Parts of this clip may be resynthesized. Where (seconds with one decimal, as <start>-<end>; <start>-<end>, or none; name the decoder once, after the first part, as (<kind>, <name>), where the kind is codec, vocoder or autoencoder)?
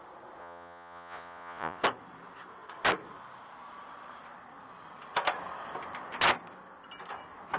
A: 0.4-1.8 (vocoder, Vocos)